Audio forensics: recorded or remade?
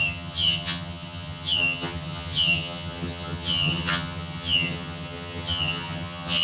remade